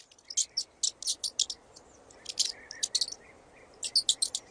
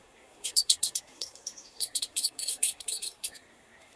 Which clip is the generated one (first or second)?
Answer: second